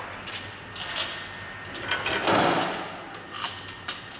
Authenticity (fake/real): real